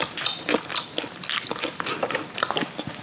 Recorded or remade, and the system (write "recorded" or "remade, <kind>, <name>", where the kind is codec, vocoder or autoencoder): recorded